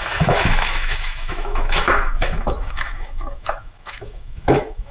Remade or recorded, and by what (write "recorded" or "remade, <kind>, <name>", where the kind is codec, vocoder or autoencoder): remade, autoencoder, DAC-VAE